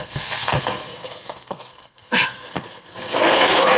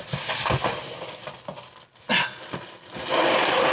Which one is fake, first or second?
first